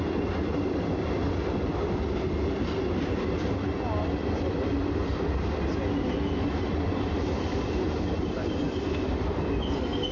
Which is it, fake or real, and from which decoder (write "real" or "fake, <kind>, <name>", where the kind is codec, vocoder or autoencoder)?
real